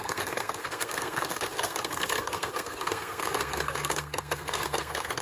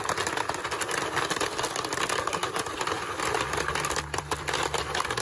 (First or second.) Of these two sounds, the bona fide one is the second